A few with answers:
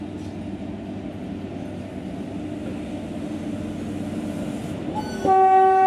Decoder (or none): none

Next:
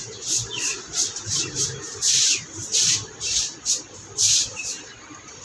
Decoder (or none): vocoder, BigVGAN v2